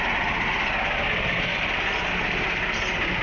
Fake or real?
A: real